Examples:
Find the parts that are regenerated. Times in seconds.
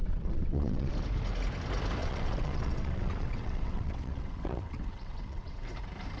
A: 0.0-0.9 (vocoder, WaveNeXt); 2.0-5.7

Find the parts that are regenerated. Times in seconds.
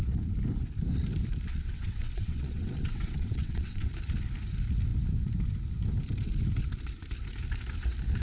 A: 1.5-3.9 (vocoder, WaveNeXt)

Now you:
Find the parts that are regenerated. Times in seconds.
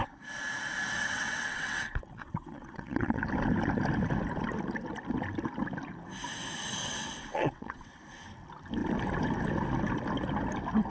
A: 1.0-3.2 (vocoder, WaveNeXt); 6.8-8.0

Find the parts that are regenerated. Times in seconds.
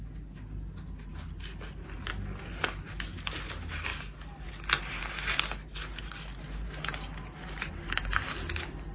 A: none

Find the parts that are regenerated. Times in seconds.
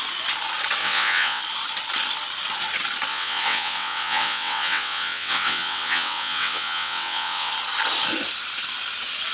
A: 0.8-1.4 (vocoder, WaveNeXt); 3.1-7.5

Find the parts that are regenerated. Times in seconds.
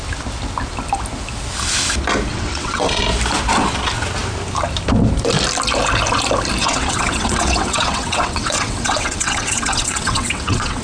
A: 2.3-3.0 (vocoder, WaveNeXt); 6.6-10.8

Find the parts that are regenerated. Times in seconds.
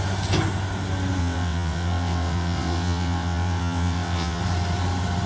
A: 1.2-4.4 (vocoder, WaveNeXt)